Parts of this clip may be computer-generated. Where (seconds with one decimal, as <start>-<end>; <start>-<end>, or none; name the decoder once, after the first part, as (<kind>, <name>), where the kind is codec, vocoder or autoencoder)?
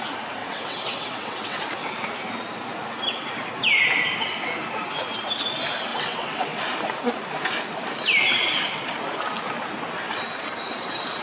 0.4-1.6 (vocoder, WaveNeXt); 5.9-6.6